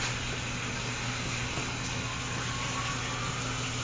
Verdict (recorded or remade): recorded